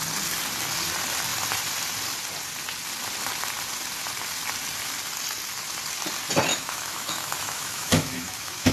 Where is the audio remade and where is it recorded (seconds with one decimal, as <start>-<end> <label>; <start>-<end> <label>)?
0.0-6.5 recorded; 6.5-8.7 remade